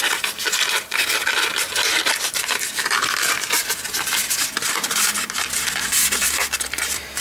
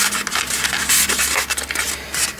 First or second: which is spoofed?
first